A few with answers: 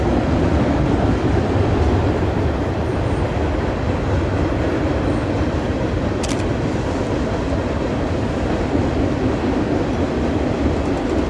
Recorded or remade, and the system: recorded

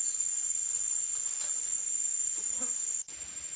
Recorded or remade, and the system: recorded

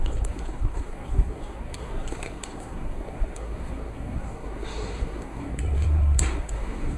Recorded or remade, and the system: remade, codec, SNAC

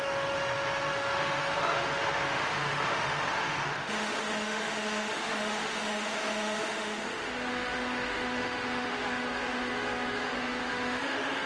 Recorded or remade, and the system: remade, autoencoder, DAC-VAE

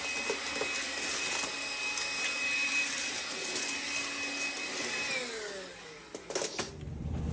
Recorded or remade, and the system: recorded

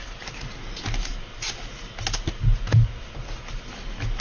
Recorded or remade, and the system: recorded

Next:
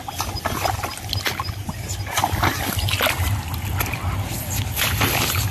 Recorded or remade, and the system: recorded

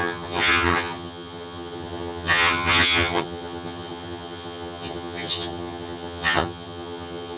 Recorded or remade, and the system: remade, vocoder, HiFi-GAN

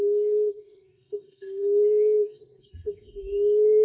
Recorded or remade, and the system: remade, codec, SNAC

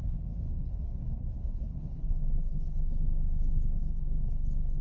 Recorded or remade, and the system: remade, codec, HILCodec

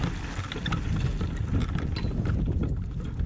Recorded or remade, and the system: recorded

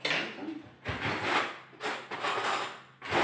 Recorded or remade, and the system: recorded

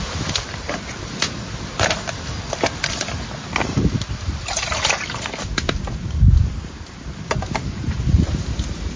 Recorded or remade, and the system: recorded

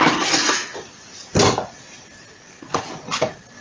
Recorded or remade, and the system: recorded